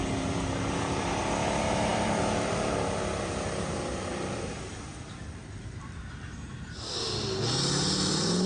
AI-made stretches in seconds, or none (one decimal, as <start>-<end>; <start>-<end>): 4.1-4.7; 5.4-6.0